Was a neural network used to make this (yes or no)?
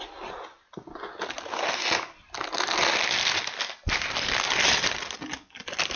no